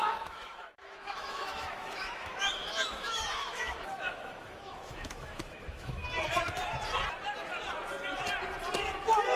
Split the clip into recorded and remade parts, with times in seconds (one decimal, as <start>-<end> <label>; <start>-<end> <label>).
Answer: 0.0-6.0 remade; 6.0-9.4 recorded